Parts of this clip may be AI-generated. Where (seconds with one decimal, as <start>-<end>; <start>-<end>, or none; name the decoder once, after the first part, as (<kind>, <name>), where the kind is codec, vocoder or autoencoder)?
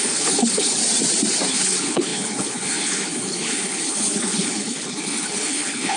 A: 0.0-0.8 (codec, HILCodec); 1.5-6.0